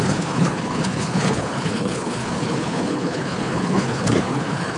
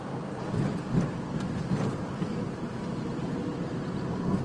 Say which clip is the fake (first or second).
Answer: first